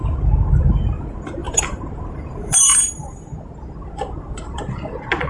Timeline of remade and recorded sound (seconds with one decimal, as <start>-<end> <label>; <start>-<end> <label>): 0.0-1.4 recorded; 1.4-4.6 remade; 4.6-5.3 recorded

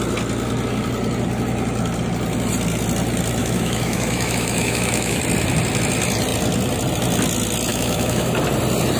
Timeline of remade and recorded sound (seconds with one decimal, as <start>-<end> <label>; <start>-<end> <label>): 0.0-3.4 recorded; 3.4-5.2 remade; 5.2-7.7 recorded; 7.7-8.3 remade; 8.3-9.0 recorded

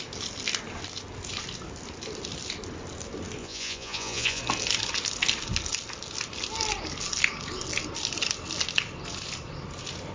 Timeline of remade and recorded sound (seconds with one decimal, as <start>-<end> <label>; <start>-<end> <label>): 0.0-3.4 recorded; 3.4-4.4 remade; 4.4-10.1 recorded